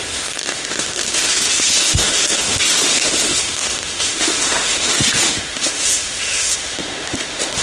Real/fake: fake